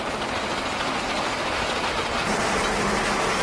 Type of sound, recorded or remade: recorded